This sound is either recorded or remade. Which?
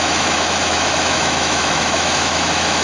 remade